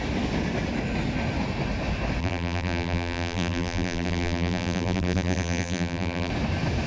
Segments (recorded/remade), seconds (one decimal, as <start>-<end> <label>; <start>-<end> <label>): 0.0-2.2 recorded; 2.2-6.3 remade; 6.3-6.9 recorded